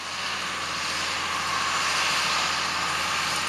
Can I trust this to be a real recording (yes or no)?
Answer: yes